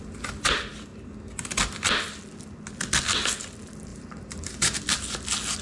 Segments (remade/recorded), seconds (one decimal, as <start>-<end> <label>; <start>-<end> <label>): 0.0-3.9 recorded; 3.9-4.8 remade; 4.8-5.6 recorded